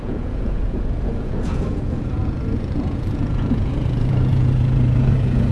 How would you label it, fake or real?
fake